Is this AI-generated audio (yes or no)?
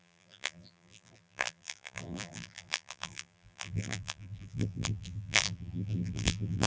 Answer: yes